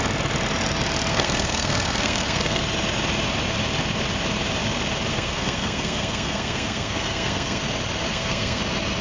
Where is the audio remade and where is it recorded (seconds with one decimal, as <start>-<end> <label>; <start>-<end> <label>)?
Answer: 0.0-1.1 recorded; 1.1-2.6 remade; 2.6-5.1 recorded; 5.1-7.6 remade; 7.6-8.1 recorded; 8.1-8.6 remade; 8.6-9.0 recorded